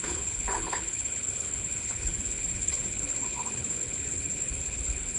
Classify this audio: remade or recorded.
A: remade